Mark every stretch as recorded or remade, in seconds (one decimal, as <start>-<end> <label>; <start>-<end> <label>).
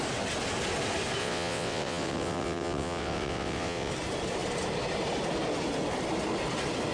0.0-1.2 recorded; 1.2-3.9 remade; 3.9-6.9 recorded